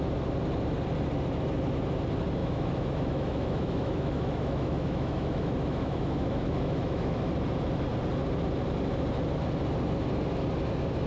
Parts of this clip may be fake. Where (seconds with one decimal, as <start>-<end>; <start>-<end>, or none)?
2.4-7.3